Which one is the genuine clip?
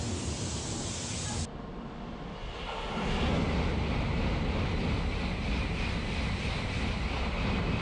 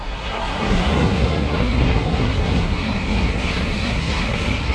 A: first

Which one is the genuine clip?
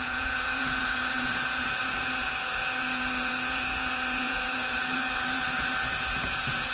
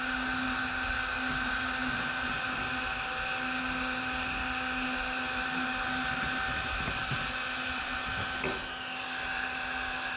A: second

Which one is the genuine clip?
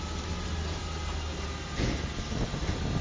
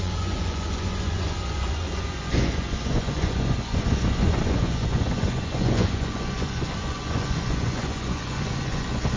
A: first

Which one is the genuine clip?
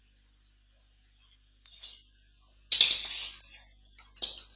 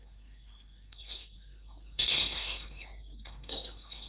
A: first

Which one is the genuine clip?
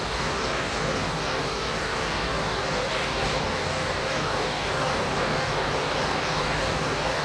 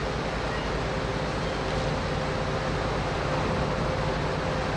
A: second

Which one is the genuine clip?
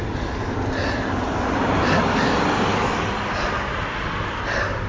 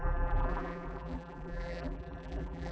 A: first